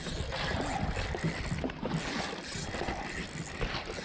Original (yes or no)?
yes